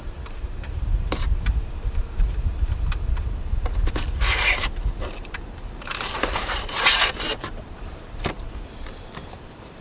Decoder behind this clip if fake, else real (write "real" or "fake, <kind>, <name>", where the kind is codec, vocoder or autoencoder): fake, vocoder, BigVGAN v2